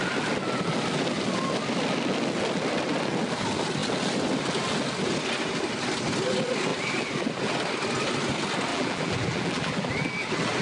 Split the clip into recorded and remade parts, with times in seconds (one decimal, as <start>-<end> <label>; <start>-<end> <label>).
0.0-8.7 recorded; 8.7-9.9 remade; 9.9-10.6 recorded